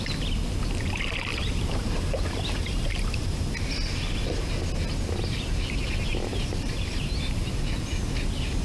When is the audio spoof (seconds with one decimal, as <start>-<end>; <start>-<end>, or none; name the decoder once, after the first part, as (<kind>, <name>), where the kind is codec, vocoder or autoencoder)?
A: 1.3-3.4 (vocoder, BigVGAN v2); 6.3-7.5